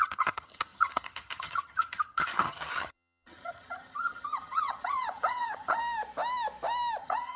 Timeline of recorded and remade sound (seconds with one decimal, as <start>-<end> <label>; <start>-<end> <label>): 0.0-5.8 remade; 5.8-7.0 recorded; 7.0-7.4 remade